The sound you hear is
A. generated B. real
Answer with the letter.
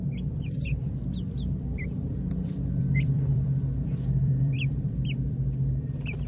A